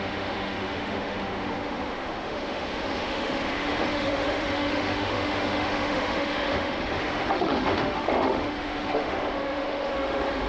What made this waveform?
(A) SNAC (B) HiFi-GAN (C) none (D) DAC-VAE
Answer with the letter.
D